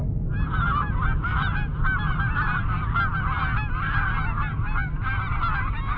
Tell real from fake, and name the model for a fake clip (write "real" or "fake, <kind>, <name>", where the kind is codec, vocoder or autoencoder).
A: real